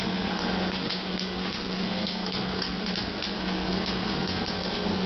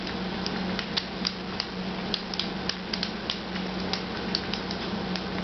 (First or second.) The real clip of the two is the second